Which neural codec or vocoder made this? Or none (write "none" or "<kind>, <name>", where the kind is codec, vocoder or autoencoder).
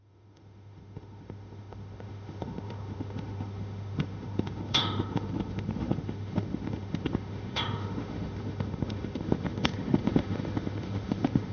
autoencoder, DAC-VAE